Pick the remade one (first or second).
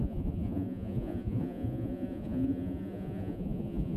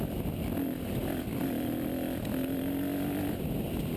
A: first